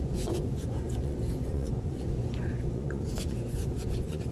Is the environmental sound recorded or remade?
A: remade